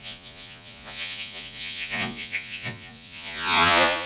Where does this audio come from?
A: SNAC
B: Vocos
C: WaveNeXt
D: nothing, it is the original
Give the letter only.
B